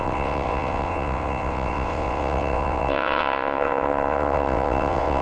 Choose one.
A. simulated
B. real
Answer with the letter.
A